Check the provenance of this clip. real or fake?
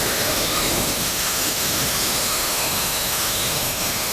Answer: fake